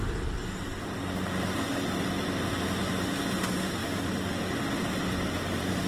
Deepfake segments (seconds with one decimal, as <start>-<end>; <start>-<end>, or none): none